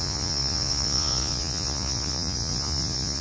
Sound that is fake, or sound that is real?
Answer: fake